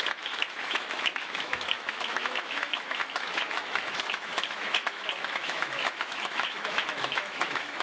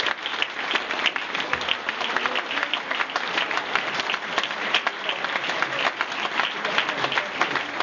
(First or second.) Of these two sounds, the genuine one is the second